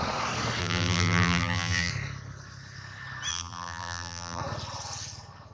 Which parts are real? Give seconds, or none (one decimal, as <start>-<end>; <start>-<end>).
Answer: 0.0-0.6; 1.9-3.3; 4.4-5.5